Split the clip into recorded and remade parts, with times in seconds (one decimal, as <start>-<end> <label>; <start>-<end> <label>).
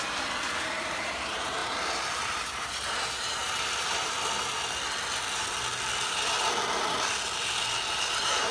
0.0-3.4 remade; 3.4-7.9 recorded; 7.9-8.5 remade